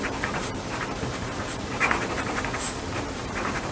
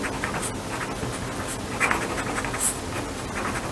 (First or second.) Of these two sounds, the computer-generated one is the first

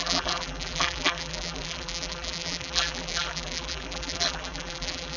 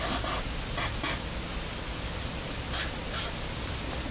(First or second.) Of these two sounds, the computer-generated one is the first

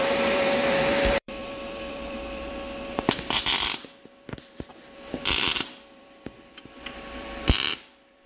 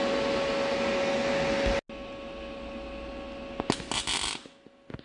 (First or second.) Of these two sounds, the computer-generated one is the first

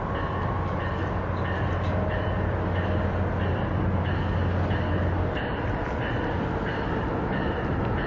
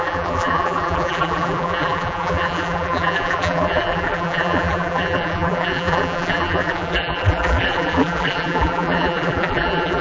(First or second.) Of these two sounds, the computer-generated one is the second